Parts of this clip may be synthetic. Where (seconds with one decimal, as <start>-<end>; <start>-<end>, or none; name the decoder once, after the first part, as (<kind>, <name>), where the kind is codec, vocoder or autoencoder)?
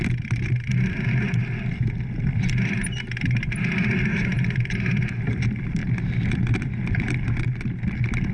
none